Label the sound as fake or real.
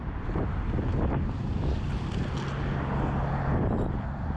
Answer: real